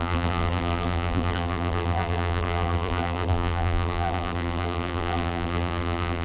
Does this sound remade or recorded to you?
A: remade